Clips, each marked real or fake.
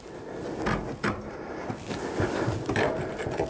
real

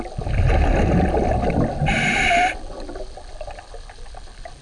real